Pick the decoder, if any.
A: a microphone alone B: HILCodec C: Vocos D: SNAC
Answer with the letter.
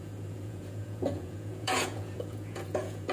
C